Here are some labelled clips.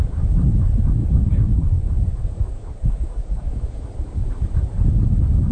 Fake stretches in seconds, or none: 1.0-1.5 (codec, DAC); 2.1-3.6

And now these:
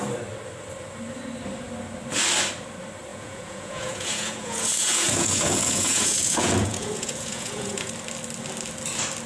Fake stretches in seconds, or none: 3.1-7.9 (vocoder, Vocos)